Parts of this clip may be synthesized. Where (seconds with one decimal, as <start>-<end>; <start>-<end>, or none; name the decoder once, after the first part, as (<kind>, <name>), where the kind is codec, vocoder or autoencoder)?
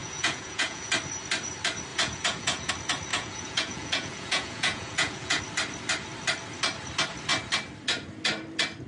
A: 0.0-0.9 (vocoder, Vocos); 1.9-2.7; 3.1-5.4